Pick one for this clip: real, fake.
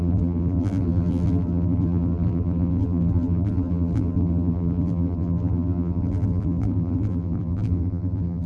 fake